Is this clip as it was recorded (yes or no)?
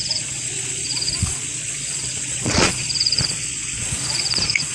no